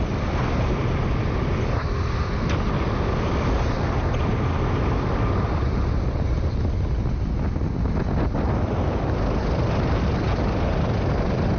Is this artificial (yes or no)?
no